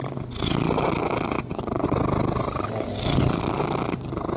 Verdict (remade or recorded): remade